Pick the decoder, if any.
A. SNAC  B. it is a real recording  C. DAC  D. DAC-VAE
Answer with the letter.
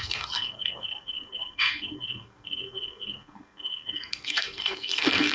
A